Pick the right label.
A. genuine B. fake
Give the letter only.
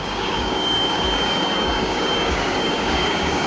B